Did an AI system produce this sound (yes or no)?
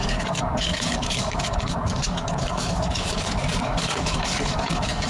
yes